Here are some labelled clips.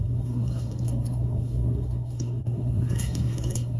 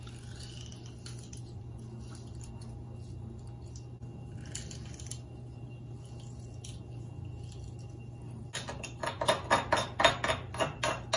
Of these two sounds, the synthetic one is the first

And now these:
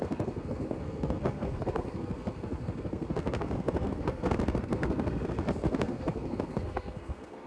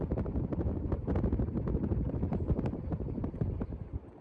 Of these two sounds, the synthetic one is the first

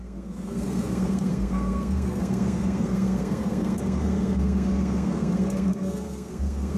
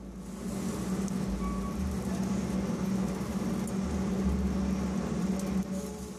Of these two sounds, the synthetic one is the first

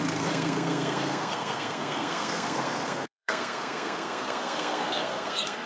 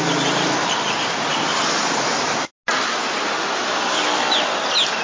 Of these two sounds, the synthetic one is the first